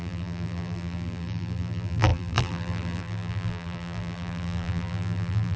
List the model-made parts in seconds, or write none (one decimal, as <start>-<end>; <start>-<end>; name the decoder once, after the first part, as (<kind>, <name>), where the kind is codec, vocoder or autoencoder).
0.0-5.6 (vocoder, BigVGAN v2)